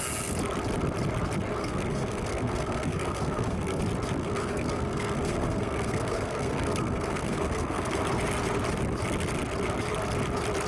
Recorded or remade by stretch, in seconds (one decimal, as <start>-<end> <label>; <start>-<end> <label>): 0.0-1.6 recorded; 1.6-3.8 remade; 3.8-4.2 recorded; 4.2-8.0 remade; 8.0-10.7 recorded